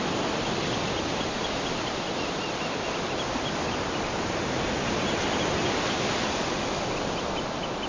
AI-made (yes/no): no